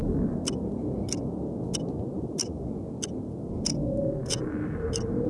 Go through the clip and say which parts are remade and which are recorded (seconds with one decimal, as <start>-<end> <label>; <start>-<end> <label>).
0.0-5.3 recorded